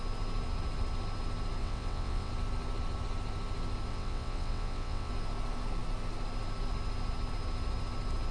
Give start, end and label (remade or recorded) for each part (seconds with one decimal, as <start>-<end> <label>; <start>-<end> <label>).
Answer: 0.0-1.6 recorded; 1.6-2.3 remade; 2.3-3.9 recorded; 3.9-5.1 remade; 5.1-8.3 recorded